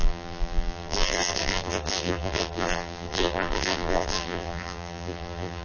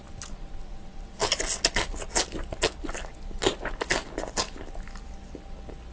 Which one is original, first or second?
second